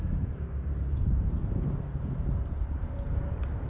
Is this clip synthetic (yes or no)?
yes